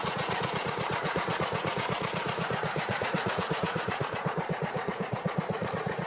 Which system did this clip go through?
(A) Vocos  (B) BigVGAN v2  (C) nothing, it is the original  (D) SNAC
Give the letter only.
A